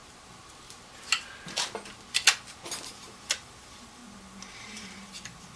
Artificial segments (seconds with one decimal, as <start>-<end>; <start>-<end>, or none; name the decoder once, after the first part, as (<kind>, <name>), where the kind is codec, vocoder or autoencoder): 2.9-4.0 (vocoder, BigVGAN v2); 4.6-5.6